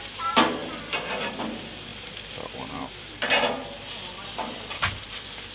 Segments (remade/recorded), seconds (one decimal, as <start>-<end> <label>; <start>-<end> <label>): 0.0-5.5 recorded